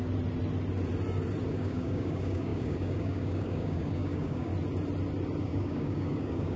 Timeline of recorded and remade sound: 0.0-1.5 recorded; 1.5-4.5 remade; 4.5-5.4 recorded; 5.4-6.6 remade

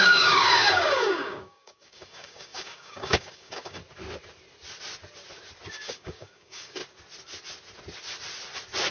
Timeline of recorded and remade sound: 0.0-3.8 remade; 3.8-5.7 recorded; 5.7-6.8 remade; 6.8-8.9 recorded

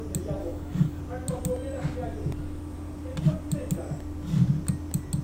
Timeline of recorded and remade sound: 0.0-0.4 recorded; 0.4-1.0 remade; 1.0-5.2 recorded

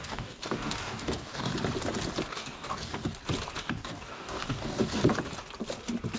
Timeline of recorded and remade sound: 0.0-1.5 remade; 1.5-2.3 recorded; 2.3-3.0 remade; 3.0-3.6 recorded; 3.6-5.0 remade; 5.0-6.2 recorded

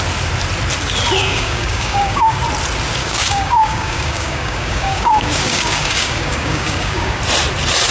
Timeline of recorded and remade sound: 0.0-1.2 recorded; 1.2-2.4 remade; 2.4-3.0 recorded; 3.0-7.2 remade; 7.2-7.9 recorded